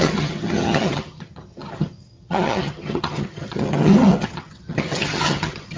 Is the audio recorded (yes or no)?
no